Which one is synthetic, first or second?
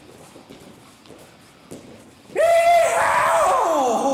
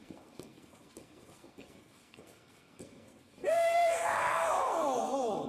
second